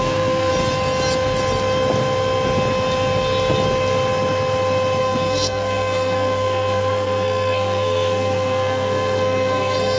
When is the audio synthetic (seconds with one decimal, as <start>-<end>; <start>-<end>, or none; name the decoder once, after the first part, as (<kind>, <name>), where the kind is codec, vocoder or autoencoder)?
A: 0.0-0.5 (codec, SNAC); 5.0-10.0

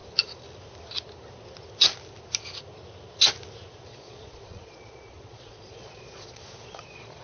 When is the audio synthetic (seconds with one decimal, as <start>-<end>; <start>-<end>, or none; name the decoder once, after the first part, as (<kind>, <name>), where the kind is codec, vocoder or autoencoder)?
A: 3.9-7.2 (vocoder, Vocos)

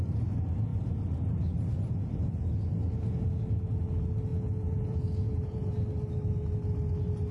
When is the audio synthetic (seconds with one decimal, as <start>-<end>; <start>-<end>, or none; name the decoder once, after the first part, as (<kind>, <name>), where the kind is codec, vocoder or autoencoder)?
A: 4.3-5.7 (vocoder, Vocos)